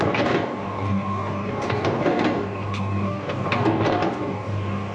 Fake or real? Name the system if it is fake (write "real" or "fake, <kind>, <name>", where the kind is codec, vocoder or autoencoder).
fake, codec, DAC